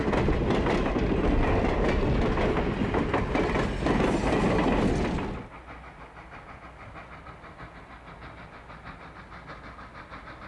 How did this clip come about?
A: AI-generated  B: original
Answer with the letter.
B